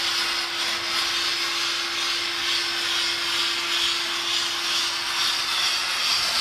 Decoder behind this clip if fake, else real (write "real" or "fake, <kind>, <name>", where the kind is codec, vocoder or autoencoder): real